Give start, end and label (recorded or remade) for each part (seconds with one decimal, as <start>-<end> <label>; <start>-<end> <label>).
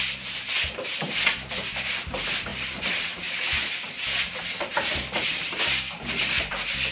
0.0-2.5 recorded; 2.5-6.9 remade